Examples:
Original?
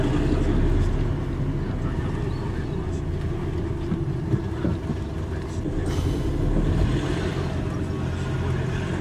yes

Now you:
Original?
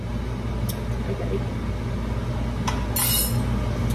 yes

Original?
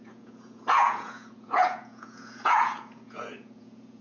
no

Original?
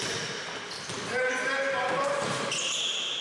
yes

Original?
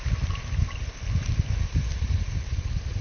yes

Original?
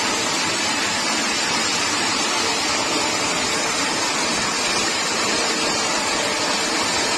no